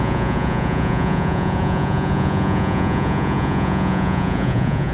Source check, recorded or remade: remade